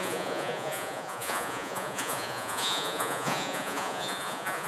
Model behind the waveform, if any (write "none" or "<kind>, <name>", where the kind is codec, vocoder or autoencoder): vocoder, Vocos